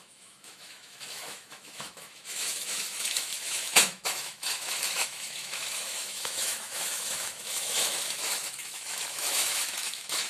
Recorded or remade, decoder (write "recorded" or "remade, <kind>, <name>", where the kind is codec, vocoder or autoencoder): remade, autoencoder, DAC-VAE